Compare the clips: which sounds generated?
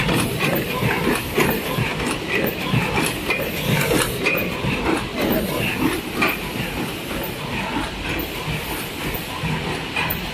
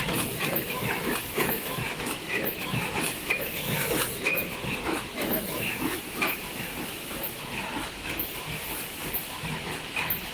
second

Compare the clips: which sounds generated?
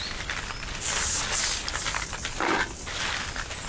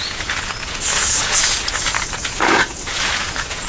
second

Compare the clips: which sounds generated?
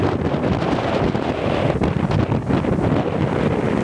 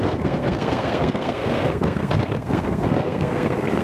second